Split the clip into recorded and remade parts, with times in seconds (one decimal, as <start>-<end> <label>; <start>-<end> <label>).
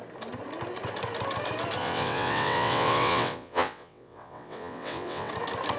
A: 0.0-1.8 recorded; 1.8-5.3 remade; 5.3-5.8 recorded